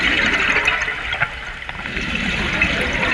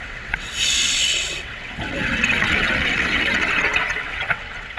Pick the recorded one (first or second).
first